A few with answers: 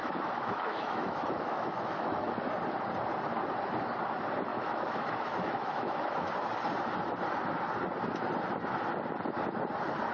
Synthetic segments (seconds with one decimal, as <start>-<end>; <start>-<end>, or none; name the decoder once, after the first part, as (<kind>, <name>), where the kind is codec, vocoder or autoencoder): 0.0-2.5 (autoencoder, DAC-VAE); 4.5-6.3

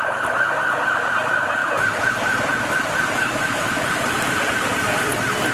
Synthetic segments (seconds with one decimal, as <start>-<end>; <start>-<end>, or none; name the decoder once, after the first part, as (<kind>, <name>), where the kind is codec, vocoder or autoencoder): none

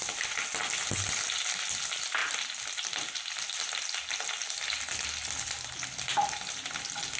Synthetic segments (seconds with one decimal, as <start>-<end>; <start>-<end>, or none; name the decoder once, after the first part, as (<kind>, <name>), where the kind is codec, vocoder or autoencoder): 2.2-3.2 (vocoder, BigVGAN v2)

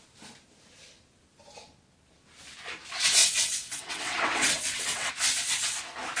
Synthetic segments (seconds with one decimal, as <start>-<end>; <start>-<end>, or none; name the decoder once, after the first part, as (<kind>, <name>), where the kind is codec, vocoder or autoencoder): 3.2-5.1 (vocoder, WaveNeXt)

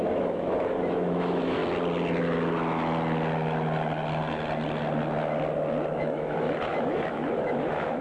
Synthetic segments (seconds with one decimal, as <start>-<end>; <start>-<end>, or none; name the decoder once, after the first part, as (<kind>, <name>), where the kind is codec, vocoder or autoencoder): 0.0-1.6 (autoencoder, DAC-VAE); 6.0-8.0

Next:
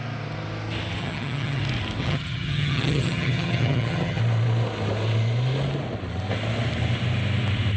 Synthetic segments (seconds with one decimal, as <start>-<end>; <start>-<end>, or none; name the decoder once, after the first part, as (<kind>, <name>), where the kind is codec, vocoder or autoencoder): 1.0-1.6 (vocoder, HiFi-GAN); 2.0-4.2

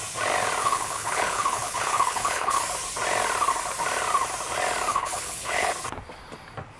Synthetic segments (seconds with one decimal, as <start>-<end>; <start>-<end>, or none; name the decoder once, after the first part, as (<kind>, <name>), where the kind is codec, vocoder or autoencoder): 0.6-2.6 (codec, HILCodec); 4.9-5.7